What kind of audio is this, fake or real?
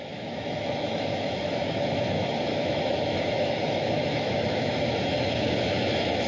fake